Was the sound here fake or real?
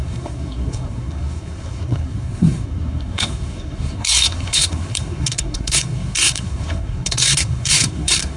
fake